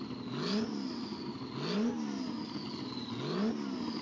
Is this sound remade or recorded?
recorded